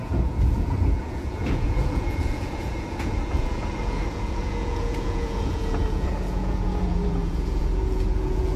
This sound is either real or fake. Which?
fake